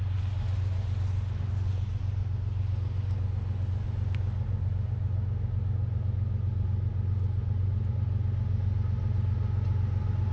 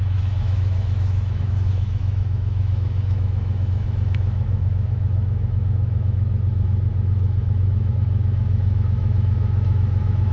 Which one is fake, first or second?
second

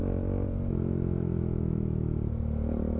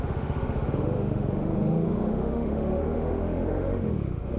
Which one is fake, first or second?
second